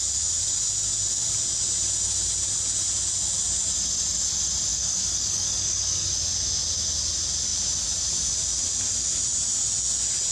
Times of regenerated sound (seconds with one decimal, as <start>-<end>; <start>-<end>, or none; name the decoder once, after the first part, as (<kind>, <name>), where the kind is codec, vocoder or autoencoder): 4.7-6.1 (codec, DAC)